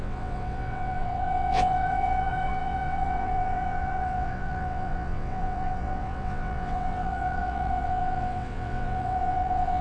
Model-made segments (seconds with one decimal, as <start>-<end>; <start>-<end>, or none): 0.0-9.8